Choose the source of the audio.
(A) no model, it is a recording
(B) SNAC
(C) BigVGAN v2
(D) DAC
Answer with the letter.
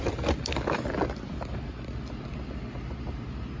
A